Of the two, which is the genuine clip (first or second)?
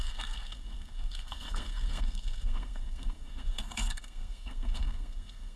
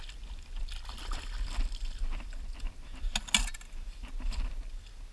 second